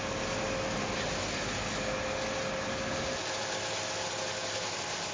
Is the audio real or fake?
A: real